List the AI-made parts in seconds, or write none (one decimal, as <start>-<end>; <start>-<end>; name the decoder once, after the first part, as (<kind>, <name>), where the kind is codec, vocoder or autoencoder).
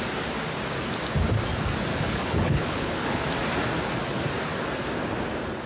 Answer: 1.9-3.2 (codec, HILCodec)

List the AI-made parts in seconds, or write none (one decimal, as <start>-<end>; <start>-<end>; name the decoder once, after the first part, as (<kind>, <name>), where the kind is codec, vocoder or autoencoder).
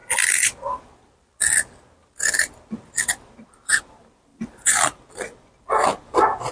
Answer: 4.3-5.0 (vocoder, BigVGAN v2)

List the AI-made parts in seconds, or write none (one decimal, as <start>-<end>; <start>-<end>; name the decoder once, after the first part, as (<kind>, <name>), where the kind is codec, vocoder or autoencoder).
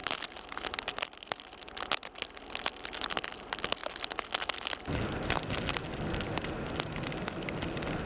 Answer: none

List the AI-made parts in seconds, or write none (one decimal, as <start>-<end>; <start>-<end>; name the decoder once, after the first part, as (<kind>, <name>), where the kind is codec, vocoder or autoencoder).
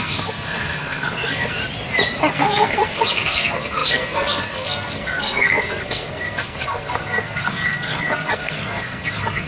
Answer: 0.0-1.6 (codec, SNAC); 2.3-9.5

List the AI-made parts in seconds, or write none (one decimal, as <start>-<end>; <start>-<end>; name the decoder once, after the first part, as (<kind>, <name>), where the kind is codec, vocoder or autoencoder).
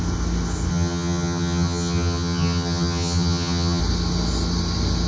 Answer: 0.7-3.8 (vocoder, HiFi-GAN)